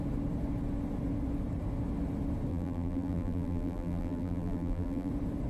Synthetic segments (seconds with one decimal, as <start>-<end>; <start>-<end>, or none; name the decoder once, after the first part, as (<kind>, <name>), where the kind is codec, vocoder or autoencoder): 2.5-5.1 (vocoder, BigVGAN v2)